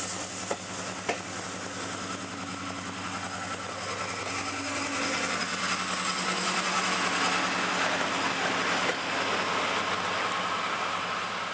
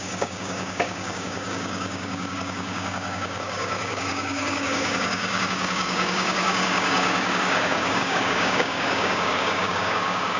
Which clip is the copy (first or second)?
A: second